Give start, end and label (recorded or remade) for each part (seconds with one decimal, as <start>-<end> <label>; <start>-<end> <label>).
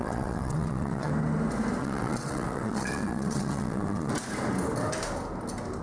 0.0-1.1 remade; 1.1-1.8 recorded; 1.8-4.1 remade; 4.1-5.8 recorded